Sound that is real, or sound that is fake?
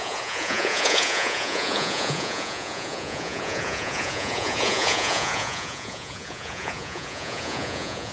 fake